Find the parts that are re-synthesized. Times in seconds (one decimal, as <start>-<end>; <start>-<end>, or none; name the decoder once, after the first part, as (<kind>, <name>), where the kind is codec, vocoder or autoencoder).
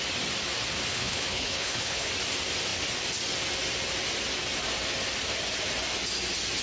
0.9-2.1 (codec, HILCodec)